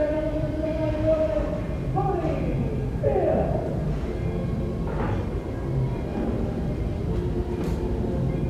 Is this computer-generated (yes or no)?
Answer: yes